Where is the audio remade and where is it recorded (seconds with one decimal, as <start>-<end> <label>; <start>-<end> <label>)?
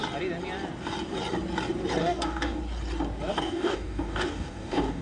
0.0-2.0 recorded; 2.0-2.6 remade; 2.6-3.3 recorded; 3.3-5.0 remade